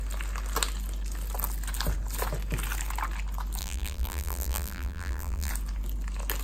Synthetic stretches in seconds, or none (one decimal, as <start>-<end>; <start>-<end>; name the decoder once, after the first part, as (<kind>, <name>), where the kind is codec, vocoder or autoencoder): 3.6-5.5 (vocoder, BigVGAN v2)